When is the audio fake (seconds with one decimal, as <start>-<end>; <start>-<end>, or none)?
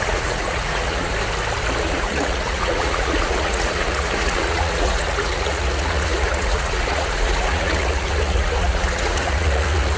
0.0-1.1; 1.8-10.0